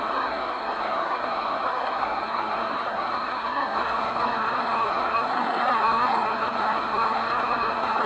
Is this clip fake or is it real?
fake